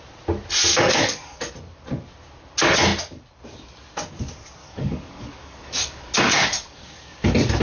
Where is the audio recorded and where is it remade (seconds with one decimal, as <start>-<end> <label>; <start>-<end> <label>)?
0.0-0.7 recorded; 0.7-1.5 remade; 1.5-4.6 recorded; 4.6-7.6 remade